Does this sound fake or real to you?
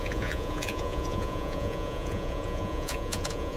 fake